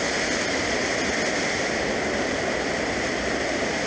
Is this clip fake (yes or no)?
no